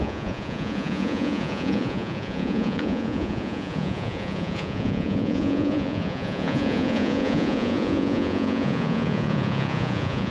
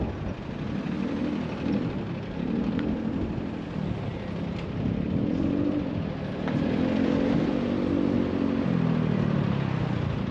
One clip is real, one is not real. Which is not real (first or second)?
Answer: first